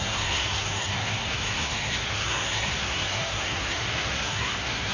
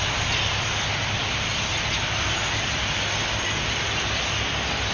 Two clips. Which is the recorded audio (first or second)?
second